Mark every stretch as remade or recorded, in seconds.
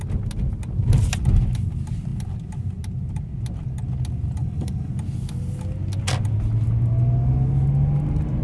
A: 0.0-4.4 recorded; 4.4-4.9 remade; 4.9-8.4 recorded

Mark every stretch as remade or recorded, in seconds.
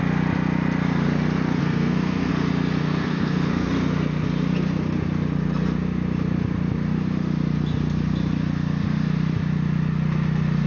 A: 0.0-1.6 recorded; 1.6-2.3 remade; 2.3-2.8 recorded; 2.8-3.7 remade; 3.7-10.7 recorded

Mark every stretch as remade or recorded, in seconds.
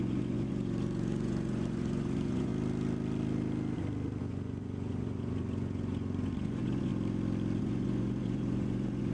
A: 0.0-2.5 remade; 2.5-4.2 recorded; 4.2-6.9 remade; 6.9-7.6 recorded; 7.6-9.1 remade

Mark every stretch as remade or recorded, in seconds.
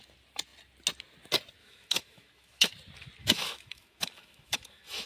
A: 0.0-1.6 recorded; 1.6-2.7 remade; 2.7-3.2 recorded; 3.2-5.1 remade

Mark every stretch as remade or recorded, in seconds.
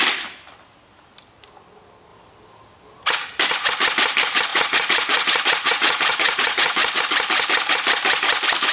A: 0.0-4.5 recorded; 4.5-7.0 remade; 7.0-8.7 recorded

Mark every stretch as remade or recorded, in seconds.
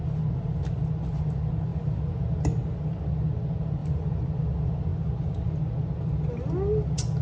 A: 0.0-3.8 recorded; 3.8-4.3 remade; 4.3-7.2 recorded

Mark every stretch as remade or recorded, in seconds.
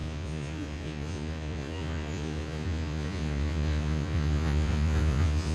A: 0.0-5.5 remade